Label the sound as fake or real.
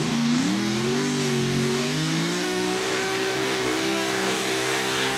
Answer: fake